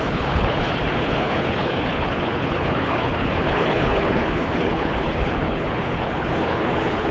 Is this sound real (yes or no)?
no